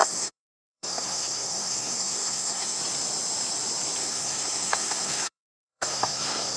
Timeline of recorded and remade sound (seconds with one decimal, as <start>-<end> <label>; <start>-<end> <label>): 0.0-2.8 remade; 2.8-4.0 recorded; 4.0-6.6 remade